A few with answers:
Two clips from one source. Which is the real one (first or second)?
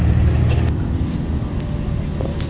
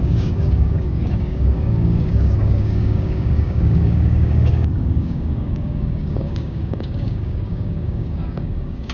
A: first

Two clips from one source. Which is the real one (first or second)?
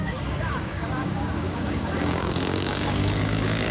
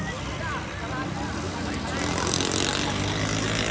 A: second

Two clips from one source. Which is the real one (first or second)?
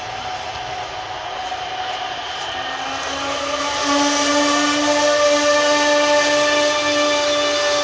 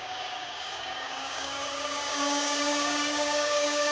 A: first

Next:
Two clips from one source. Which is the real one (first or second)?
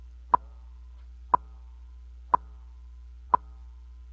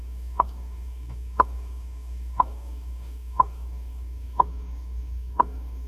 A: first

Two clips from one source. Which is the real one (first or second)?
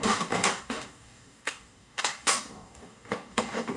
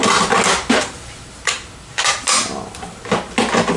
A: second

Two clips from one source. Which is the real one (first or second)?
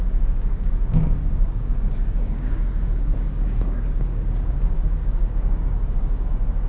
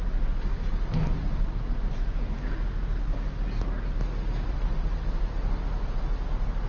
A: second